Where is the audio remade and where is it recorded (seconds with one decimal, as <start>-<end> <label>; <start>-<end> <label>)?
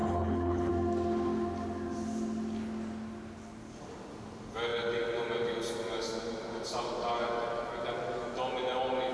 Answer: 0.0-0.7 remade; 0.7-9.1 recorded